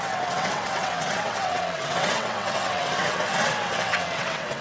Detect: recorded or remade remade